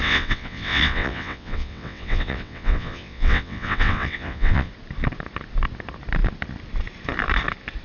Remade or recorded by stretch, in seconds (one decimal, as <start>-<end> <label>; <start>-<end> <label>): 0.0-4.7 remade; 4.7-7.8 recorded